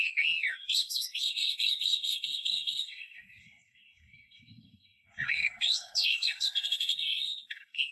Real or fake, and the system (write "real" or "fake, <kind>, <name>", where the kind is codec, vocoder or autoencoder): fake, codec, SNAC